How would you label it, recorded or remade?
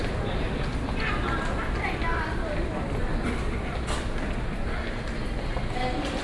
recorded